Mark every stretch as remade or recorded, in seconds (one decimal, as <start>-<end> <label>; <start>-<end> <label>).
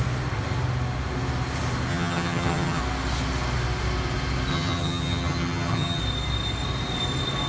0.0-1.9 recorded; 1.9-2.8 remade; 2.8-4.5 recorded; 4.5-6.0 remade; 6.0-7.5 recorded